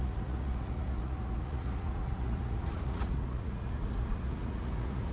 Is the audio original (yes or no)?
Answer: no